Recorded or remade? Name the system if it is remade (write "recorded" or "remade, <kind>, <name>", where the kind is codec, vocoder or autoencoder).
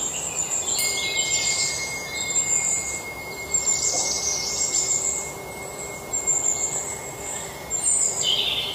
recorded